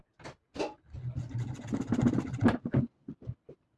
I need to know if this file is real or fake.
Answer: real